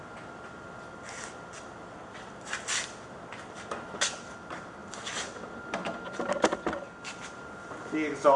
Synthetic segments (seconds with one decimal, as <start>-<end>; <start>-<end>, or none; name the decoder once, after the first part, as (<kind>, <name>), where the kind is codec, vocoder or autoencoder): none